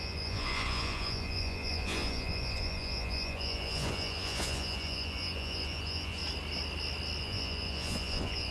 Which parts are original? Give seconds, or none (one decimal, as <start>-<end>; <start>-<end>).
6.2-7.2